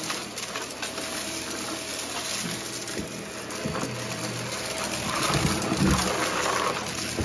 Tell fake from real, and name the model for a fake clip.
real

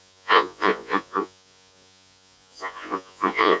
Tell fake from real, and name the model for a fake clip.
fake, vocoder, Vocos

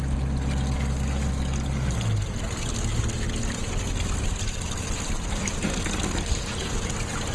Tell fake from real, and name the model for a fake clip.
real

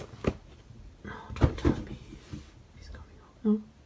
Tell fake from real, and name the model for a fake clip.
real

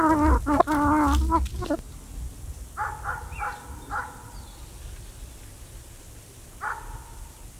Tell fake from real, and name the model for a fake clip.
real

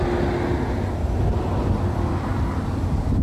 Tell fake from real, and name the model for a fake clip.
real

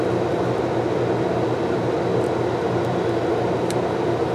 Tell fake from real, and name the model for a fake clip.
real